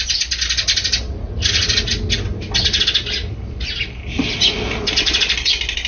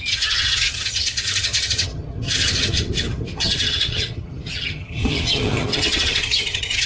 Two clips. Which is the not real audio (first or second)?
second